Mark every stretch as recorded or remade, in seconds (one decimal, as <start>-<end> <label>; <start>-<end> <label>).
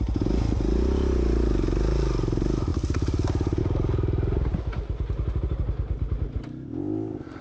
0.0-7.4 recorded